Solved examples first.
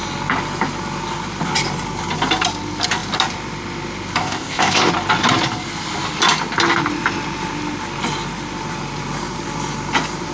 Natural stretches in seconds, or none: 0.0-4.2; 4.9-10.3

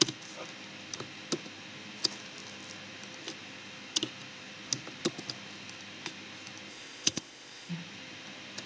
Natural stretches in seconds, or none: 0.0-6.7; 7.7-8.7

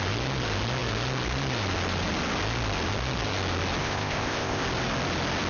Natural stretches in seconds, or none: 0.0-3.8; 4.6-5.5

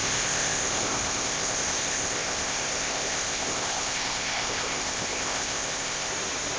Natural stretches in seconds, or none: 6.1-6.6

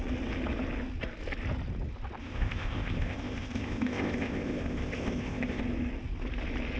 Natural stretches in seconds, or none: 0.0-2.2; 5.6-6.8

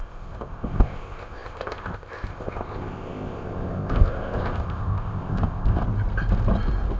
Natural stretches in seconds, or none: 5.8-7.0

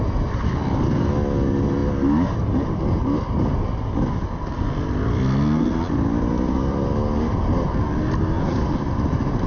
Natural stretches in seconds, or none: 0.0-9.5

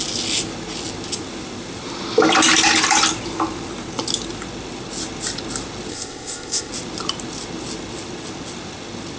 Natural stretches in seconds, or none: 0.0-5.9; 6.7-9.2